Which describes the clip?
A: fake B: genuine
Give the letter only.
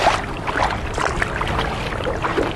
B